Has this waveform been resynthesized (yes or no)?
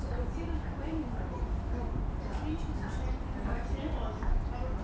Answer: no